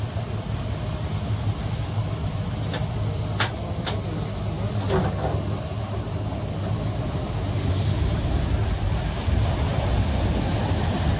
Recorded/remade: recorded